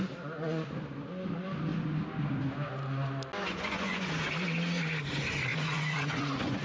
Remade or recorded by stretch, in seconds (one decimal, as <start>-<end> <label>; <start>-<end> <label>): 0.0-3.5 recorded; 3.5-4.1 remade; 4.1-5.5 recorded; 5.5-6.6 remade